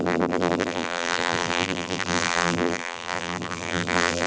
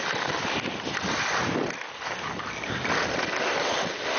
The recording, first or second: second